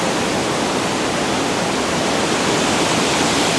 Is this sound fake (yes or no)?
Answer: no